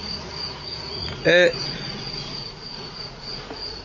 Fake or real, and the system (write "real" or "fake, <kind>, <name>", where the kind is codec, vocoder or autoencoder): fake, vocoder, Vocos